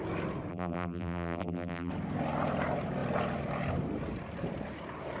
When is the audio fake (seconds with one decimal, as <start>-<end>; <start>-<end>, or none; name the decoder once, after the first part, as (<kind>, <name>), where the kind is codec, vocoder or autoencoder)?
0.5-1.9 (vocoder, BigVGAN v2)